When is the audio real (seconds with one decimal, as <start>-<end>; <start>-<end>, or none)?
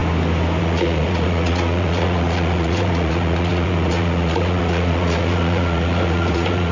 0.0-0.6